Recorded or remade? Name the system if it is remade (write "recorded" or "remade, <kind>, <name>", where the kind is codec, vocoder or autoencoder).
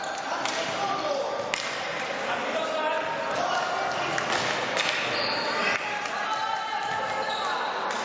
recorded